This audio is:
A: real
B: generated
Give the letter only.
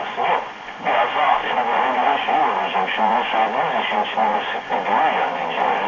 B